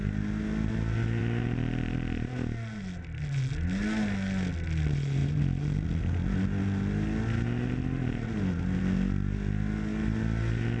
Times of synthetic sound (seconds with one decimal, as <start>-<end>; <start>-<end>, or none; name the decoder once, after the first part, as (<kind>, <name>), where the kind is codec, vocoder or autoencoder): none